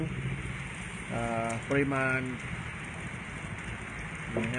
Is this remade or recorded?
recorded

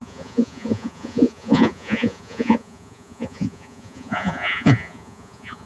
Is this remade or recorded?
remade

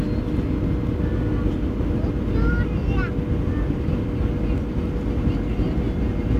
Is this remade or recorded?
recorded